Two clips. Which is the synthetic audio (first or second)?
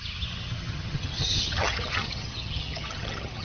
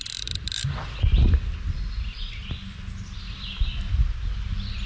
first